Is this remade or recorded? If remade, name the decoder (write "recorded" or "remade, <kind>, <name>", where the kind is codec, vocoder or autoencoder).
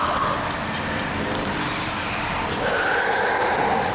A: remade, vocoder, BigVGAN v2